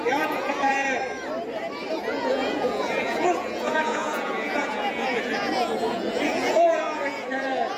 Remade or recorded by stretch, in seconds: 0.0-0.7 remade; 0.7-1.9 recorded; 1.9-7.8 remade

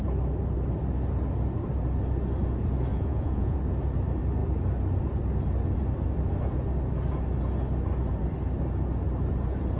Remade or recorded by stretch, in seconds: 0.0-2.9 recorded; 2.9-3.6 remade; 3.6-9.8 recorded

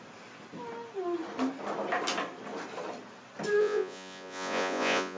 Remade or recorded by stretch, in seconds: 0.0-3.6 recorded; 3.6-5.2 remade